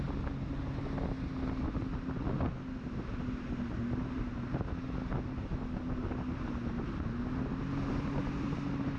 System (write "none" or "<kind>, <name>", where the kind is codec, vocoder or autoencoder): none